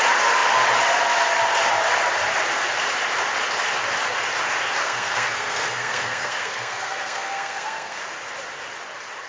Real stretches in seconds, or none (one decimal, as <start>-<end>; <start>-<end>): 0.0-4.8; 8.0-9.3